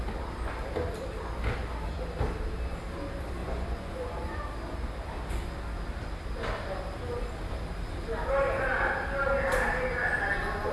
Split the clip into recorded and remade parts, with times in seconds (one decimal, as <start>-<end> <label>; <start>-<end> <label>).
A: 0.0-3.4 recorded; 3.4-4.4 remade; 4.4-10.7 recorded